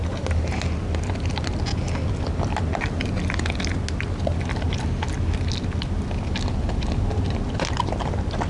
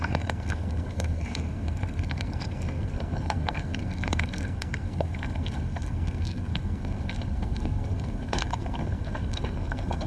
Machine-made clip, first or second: second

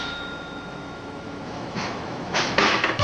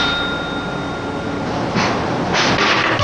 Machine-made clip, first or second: first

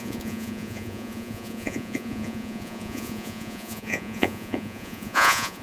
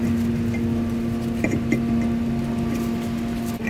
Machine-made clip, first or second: first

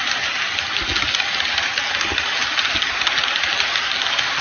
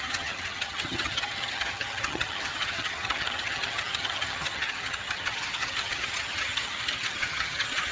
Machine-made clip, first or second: second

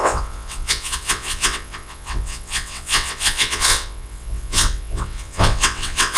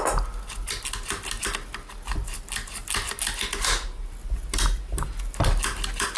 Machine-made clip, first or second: first